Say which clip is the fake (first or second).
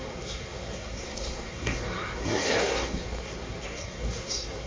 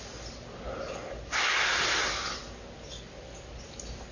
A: first